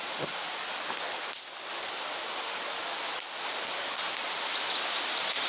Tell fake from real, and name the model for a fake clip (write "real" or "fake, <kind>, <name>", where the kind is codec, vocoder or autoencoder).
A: real